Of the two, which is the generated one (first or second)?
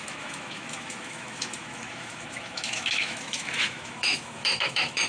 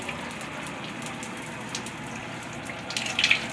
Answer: first